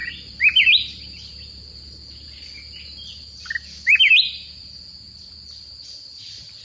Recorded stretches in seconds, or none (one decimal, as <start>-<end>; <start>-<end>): 0.0-6.6